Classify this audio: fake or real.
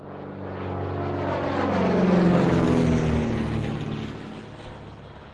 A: real